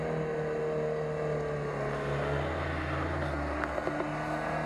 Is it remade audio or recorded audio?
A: recorded